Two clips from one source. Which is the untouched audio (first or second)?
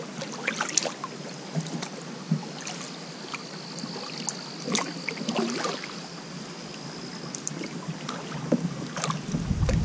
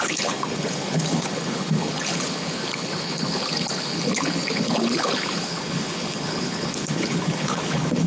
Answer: first